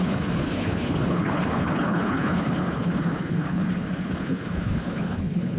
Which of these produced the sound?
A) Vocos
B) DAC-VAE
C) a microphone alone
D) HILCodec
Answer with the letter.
D